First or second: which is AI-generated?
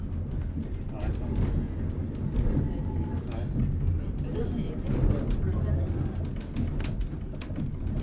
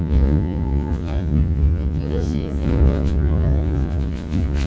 second